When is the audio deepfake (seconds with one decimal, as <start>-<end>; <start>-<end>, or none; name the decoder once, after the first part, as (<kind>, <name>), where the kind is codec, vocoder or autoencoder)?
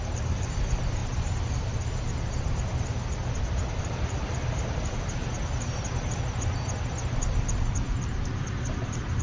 0.0-1.0 (vocoder, BigVGAN v2); 3.4-5.2; 7.2-9.2